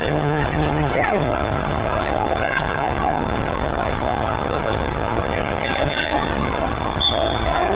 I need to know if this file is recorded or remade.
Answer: remade